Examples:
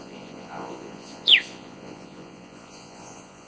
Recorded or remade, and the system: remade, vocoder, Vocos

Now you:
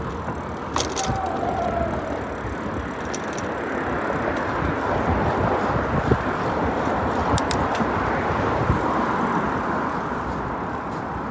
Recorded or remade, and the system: recorded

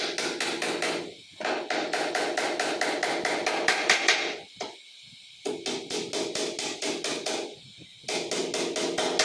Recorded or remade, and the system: recorded